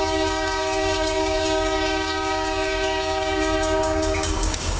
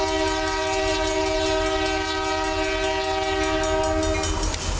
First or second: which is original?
second